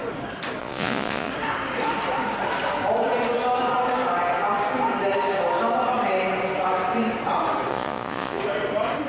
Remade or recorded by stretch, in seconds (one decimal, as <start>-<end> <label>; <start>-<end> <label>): 0.0-0.6 recorded; 0.6-1.3 remade; 1.3-7.7 recorded; 7.7-8.4 remade; 8.4-9.1 recorded